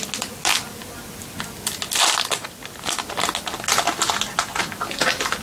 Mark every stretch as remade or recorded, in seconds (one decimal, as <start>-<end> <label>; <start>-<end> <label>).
0.0-5.4 recorded

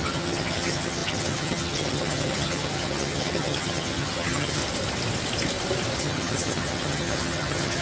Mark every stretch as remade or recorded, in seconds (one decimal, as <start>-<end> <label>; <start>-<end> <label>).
0.0-4.6 remade; 4.6-6.0 recorded; 6.0-7.8 remade

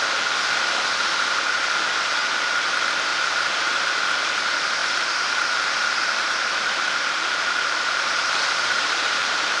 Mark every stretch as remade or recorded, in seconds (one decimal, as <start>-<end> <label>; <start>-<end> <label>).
0.0-3.1 recorded; 3.1-4.3 remade; 4.3-4.8 recorded; 4.8-9.6 remade

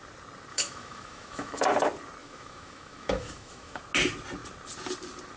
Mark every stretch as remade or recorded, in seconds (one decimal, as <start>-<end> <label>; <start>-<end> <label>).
0.0-0.5 recorded; 0.5-1.6 remade; 1.6-2.2 recorded; 2.2-3.8 remade; 3.8-5.4 recorded

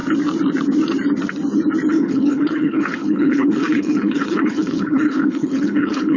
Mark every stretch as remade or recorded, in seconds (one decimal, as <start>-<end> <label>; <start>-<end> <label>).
0.0-1.9 recorded; 1.9-6.2 remade

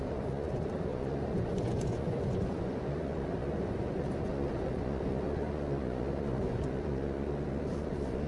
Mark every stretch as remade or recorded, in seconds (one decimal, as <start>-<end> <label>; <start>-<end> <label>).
0.0-8.3 remade

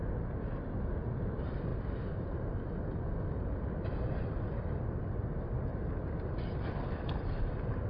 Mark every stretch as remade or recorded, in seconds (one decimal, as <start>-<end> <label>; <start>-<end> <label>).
0.0-7.9 recorded